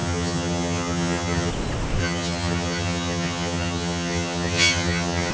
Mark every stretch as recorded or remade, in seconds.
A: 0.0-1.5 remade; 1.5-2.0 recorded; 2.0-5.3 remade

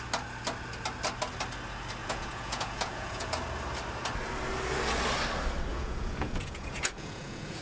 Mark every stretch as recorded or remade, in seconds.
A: 0.0-2.0 recorded; 2.0-3.3 remade; 3.3-5.7 recorded; 5.7-7.6 remade

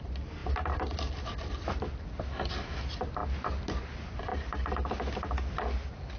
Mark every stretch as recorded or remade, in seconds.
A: 0.0-0.4 recorded; 0.4-1.8 remade; 1.8-3.2 recorded; 3.2-3.9 remade; 3.9-6.2 recorded